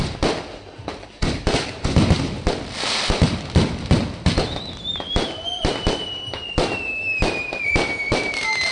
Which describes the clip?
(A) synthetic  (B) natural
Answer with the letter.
B